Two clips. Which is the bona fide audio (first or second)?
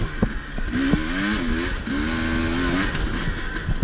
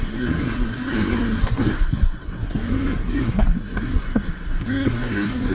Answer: first